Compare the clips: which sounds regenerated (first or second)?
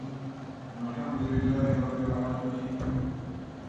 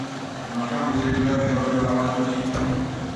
second